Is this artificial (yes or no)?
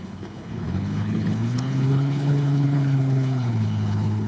yes